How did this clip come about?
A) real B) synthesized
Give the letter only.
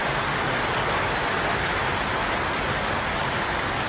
B